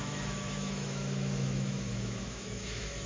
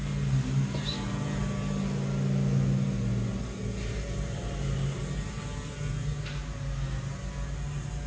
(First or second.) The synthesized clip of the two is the first